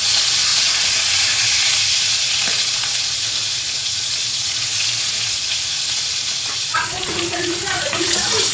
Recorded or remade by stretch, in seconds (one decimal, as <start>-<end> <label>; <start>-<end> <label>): 0.0-8.5 remade